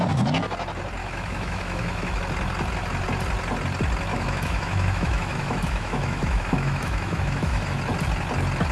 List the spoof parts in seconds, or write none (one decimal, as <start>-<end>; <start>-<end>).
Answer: 1.0-2.2; 4.1-7.8